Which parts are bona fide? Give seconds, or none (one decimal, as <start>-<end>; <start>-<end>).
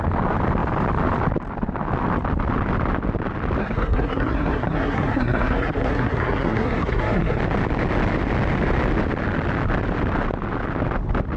0.0-3.6; 7.4-11.4